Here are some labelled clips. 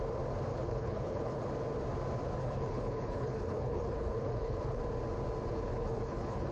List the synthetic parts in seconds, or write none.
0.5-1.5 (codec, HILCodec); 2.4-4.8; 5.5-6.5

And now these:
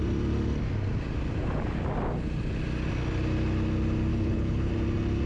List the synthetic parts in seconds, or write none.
4.1-4.7 (codec, HILCodec)

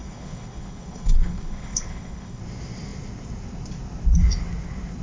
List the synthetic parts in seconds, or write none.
0.0-2.4 (codec, HILCodec)

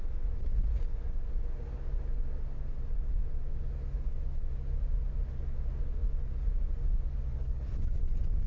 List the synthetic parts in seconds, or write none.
7.3-7.8 (codec, HILCodec)

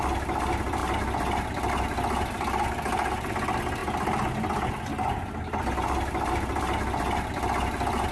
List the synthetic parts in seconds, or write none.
none

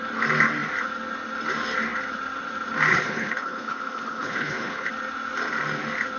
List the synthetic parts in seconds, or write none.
2.9-4.9 (codec, HILCodec)